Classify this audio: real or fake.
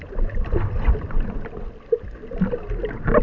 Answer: real